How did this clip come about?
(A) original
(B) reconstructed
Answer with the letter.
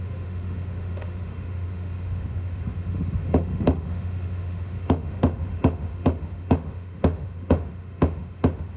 B